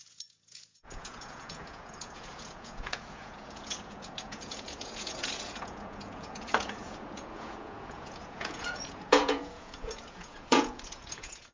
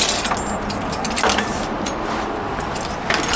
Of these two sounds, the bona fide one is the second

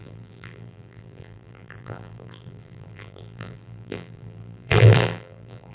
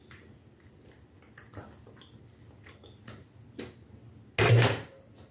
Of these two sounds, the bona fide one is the second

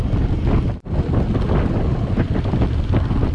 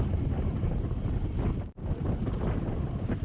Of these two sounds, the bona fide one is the first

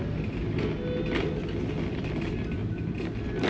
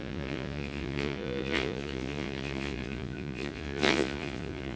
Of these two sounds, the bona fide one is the first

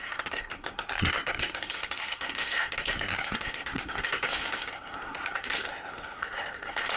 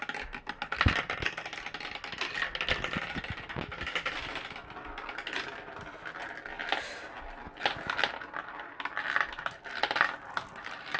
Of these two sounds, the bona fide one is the second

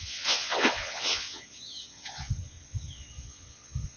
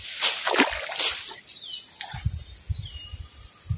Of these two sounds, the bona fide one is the second